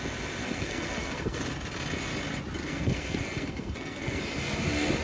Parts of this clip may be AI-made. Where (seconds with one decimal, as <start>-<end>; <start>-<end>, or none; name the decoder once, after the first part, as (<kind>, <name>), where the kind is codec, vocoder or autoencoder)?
0.4-1.4 (codec, SNAC); 2.6-4.2